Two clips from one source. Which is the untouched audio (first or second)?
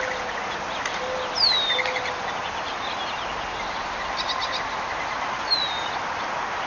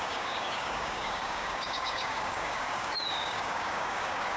first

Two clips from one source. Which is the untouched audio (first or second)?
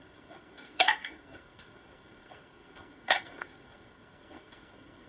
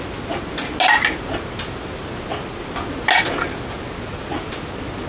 second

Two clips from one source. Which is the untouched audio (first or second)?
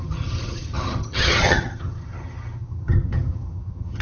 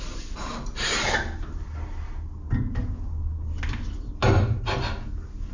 second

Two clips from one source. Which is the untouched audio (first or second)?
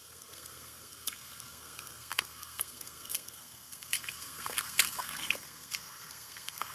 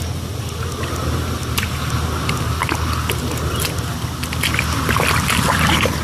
second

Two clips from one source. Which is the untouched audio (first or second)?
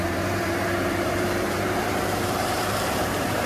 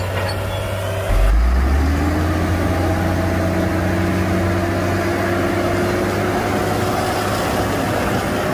second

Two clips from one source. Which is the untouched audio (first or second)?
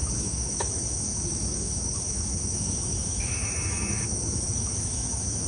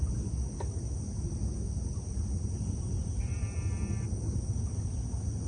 second